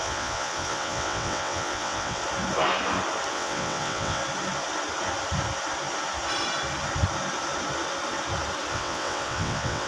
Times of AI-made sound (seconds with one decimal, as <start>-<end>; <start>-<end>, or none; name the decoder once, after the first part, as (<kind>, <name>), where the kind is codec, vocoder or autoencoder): 0.0-2.2 (vocoder, WaveNeXt); 3.3-4.2; 8.7-9.9